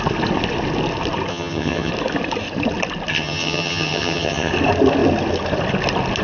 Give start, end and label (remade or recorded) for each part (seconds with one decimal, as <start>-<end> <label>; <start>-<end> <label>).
0.0-1.3 recorded; 1.3-1.9 remade; 1.9-3.1 recorded; 3.1-4.5 remade; 4.5-6.2 recorded